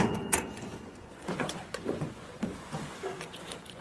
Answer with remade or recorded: remade